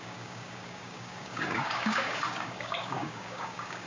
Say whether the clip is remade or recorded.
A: remade